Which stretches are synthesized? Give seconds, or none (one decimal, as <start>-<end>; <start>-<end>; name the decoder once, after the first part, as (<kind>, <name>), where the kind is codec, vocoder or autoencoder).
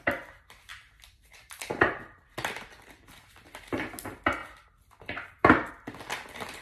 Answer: 0.7-3.2 (vocoder, BigVGAN v2)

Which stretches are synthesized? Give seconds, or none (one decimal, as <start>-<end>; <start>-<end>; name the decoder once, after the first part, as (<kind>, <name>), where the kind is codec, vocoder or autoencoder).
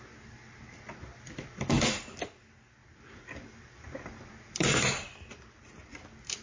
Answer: 1.1-1.8 (vocoder, BigVGAN v2); 2.8-5.4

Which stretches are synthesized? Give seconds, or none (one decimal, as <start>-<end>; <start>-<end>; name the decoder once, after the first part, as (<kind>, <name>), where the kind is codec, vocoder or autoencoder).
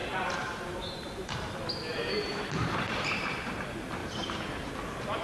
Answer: 0.0-1.5 (vocoder, BigVGAN v2); 1.9-3.6; 4.0-4.7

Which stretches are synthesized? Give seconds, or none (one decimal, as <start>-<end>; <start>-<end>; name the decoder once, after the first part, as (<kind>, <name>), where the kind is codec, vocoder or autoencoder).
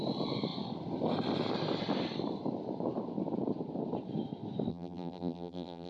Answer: 4.7-5.9 (vocoder, BigVGAN v2)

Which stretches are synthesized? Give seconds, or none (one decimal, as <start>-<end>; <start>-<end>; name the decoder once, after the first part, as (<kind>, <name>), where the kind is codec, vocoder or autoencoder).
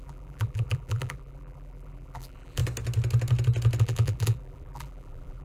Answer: 0.0-2.6 (vocoder, BigVGAN v2); 3.8-5.4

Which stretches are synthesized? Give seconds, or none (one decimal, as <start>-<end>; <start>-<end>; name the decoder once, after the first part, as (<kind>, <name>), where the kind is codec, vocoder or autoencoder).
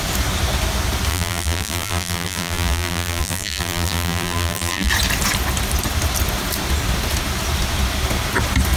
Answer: 1.1-4.9 (vocoder, BigVGAN v2)